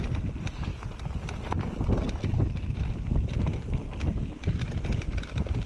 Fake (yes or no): no